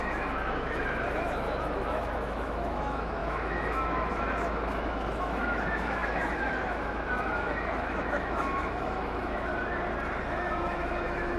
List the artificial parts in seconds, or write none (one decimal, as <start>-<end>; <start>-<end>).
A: 0.0-9.5; 10.3-11.4

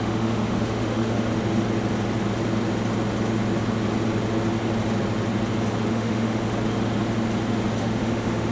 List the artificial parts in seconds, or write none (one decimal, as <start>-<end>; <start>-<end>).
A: 0.0-1.3; 5.9-6.4; 7.8-8.5

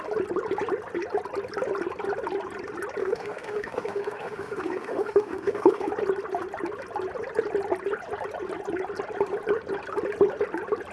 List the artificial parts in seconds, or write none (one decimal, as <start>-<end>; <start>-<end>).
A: 3.0-5.9